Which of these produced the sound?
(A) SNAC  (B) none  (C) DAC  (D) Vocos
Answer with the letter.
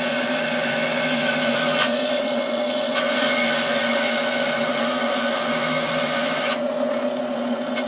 D